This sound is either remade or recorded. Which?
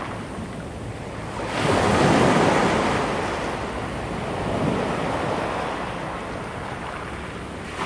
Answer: recorded